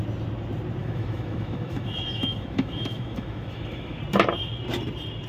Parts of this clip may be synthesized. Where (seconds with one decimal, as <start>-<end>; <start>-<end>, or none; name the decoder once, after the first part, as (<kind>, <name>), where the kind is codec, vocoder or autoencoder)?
0.8-4.0 (autoencoder, DAC-VAE)